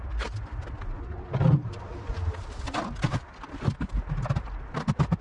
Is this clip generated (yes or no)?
no